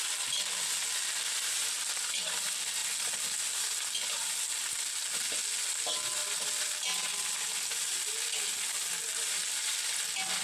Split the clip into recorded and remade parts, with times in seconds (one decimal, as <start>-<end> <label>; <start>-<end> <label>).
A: 0.0-10.4 recorded